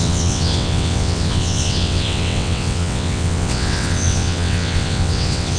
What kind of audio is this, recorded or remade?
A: remade